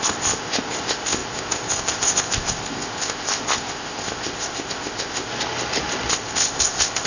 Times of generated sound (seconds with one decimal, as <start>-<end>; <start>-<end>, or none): 0.0-5.3; 6.1-7.1